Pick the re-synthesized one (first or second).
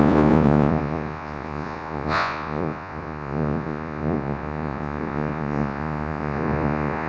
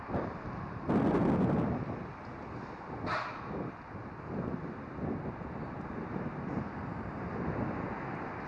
first